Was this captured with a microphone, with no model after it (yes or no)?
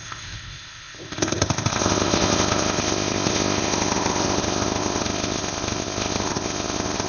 no